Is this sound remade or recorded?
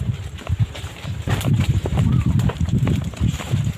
remade